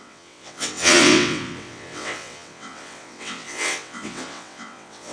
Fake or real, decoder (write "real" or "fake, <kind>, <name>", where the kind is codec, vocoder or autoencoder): fake, vocoder, WaveNeXt